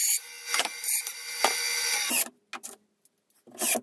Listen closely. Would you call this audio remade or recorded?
recorded